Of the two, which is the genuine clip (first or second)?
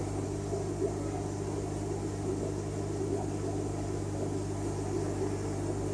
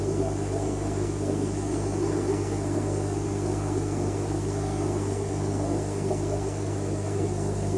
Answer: first